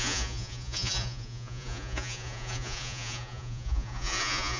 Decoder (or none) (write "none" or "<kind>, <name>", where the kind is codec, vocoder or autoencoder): vocoder, Vocos